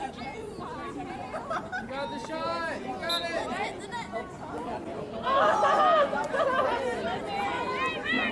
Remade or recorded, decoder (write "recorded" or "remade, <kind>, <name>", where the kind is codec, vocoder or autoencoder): recorded